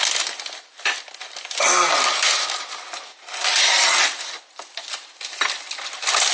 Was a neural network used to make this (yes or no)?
no